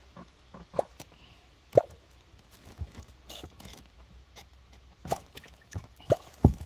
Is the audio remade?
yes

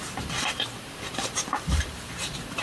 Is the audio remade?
yes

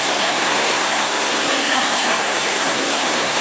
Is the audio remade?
yes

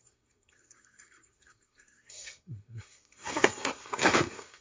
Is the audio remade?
yes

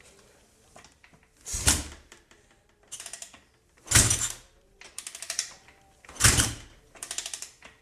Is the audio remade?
yes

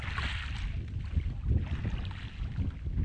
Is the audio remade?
no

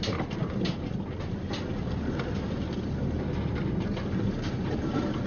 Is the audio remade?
no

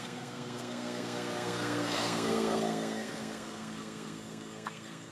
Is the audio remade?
yes